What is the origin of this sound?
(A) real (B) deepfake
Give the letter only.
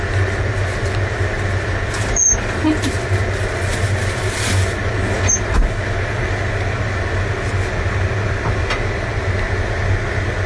A